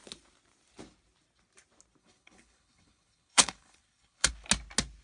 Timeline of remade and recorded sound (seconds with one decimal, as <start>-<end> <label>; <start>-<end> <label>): 0.0-2.0 recorded; 2.0-4.3 remade; 4.3-5.0 recorded